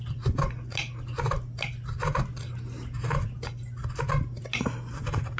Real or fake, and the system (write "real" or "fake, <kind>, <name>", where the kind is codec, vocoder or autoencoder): real